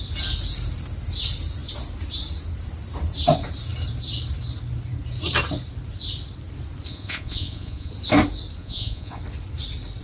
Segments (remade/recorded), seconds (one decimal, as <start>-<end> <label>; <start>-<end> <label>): 0.0-6.9 recorded; 6.9-7.9 remade; 7.9-8.6 recorded; 8.6-9.2 remade; 9.2-10.0 recorded